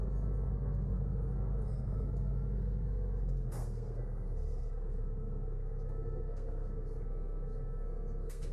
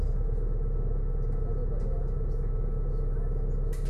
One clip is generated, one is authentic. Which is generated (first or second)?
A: first